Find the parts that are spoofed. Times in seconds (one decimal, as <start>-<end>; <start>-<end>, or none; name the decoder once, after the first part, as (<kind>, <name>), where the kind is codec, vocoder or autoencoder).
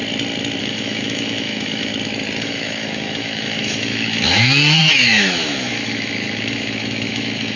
0.6-1.9 (autoencoder, DAC-VAE); 2.4-7.6